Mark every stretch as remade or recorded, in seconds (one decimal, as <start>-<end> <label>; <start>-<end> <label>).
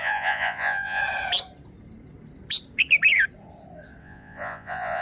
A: 0.0-1.0 remade; 1.0-4.0 recorded; 4.0-5.0 remade